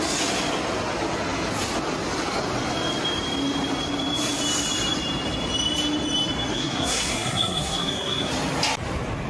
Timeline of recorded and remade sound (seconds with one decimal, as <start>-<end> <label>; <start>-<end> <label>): 0.0-6.5 recorded; 6.5-8.3 remade; 8.3-9.3 recorded